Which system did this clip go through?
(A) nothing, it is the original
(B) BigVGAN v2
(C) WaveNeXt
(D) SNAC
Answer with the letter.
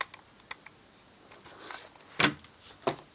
A